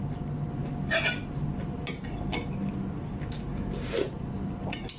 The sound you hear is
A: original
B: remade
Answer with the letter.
A